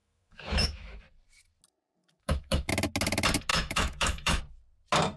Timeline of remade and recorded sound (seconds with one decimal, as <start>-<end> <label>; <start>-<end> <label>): 0.0-1.0 remade; 1.0-2.0 recorded; 2.0-2.7 remade; 2.7-3.5 recorded; 3.5-4.4 remade; 4.4-5.2 recorded